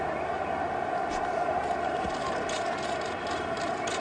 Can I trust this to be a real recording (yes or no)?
no